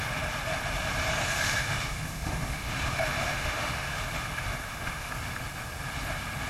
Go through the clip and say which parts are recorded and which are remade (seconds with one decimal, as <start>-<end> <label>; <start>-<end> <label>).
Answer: 0.0-1.2 recorded; 1.2-5.1 remade; 5.1-6.5 recorded